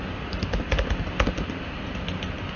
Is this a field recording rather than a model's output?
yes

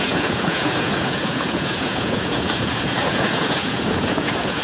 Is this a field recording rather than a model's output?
no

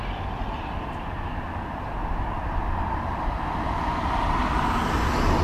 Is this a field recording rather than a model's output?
yes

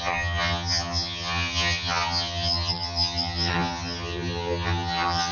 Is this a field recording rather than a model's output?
no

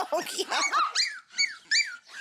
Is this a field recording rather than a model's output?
yes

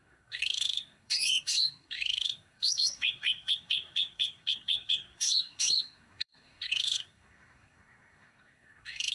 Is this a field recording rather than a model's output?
no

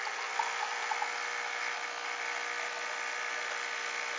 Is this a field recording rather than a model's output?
yes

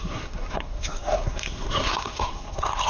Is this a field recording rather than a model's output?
no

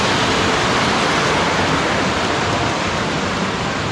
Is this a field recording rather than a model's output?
yes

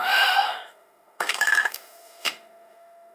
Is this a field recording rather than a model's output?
no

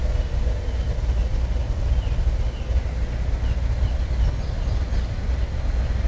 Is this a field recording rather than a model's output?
yes